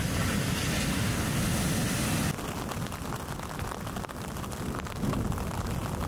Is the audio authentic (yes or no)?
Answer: yes